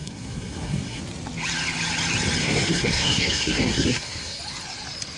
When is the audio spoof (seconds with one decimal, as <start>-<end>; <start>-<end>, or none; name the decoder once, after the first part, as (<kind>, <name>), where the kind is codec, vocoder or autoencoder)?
0.0-1.0 (codec, SNAC); 2.4-4.4